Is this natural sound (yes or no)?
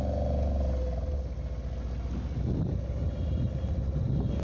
yes